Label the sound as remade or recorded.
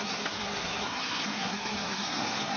remade